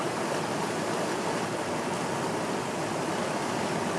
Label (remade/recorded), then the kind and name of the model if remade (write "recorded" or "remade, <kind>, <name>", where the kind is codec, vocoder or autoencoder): recorded